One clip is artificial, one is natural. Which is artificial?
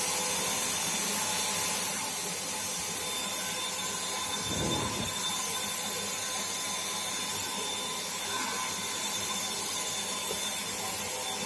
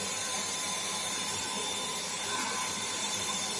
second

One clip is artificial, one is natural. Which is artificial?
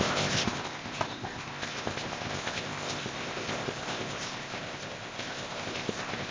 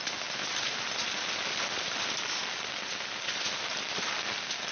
first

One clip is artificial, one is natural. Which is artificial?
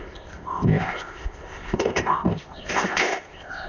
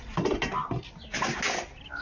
first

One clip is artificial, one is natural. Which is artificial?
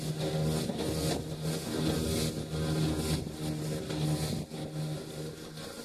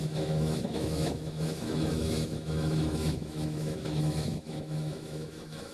second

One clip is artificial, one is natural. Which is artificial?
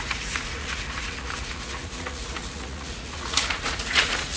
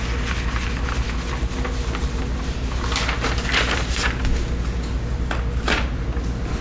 first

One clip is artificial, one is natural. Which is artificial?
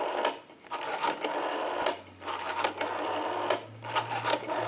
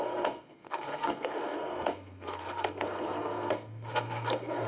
second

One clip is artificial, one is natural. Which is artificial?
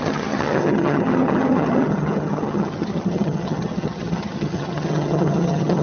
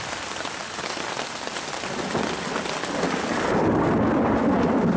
first